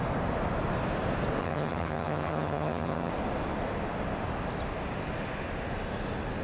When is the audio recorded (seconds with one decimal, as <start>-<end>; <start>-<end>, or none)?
0.0-1.4; 3.1-6.4